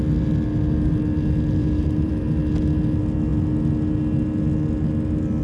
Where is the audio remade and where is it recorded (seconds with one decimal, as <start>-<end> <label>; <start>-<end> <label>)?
0.0-1.6 recorded; 1.6-2.1 remade; 2.1-5.4 recorded